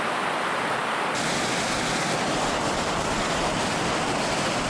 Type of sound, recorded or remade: recorded